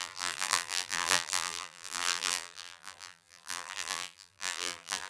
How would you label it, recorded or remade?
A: remade